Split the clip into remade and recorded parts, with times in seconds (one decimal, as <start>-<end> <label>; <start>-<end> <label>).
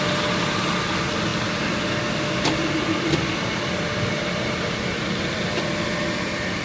0.0-6.6 recorded